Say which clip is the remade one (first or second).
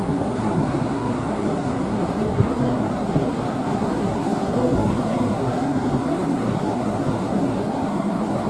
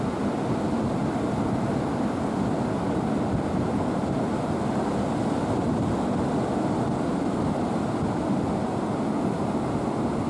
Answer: first